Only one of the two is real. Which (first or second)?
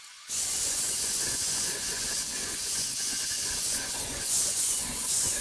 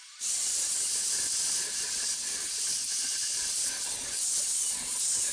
second